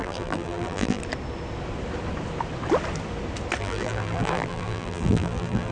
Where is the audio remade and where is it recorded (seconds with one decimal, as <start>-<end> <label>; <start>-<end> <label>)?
0.0-1.0 remade; 1.0-3.6 recorded; 3.6-5.7 remade